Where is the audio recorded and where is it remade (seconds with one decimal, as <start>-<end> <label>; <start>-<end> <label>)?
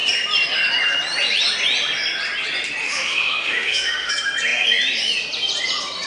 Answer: 0.0-2.8 recorded; 2.8-4.1 remade; 4.1-6.1 recorded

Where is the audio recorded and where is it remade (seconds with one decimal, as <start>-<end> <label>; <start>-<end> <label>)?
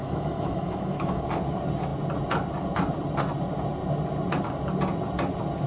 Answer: 0.0-1.2 remade; 1.2-5.7 recorded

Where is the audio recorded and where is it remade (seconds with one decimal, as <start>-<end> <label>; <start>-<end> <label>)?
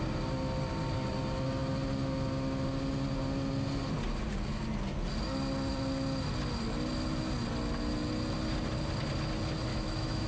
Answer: 0.0-9.7 recorded; 9.7-10.3 remade